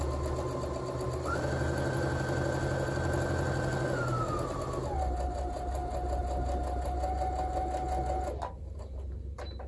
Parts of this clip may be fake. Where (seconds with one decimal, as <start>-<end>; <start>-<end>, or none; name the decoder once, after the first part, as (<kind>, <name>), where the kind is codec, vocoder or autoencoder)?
none